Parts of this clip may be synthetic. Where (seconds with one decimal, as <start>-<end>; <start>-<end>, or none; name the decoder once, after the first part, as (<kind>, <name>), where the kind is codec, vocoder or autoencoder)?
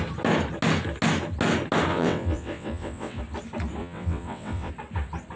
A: 1.9-3.2 (vocoder, WaveNeXt); 3.8-4.7